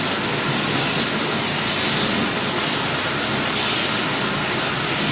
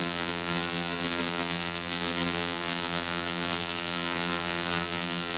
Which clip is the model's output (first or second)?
second